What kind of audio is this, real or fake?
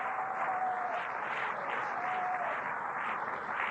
real